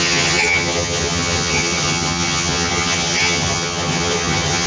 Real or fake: fake